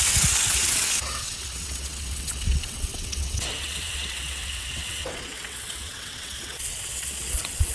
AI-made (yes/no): yes